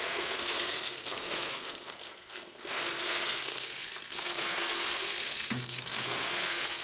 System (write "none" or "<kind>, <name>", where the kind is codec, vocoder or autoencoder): codec, SNAC